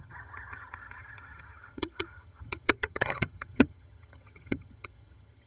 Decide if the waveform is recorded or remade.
remade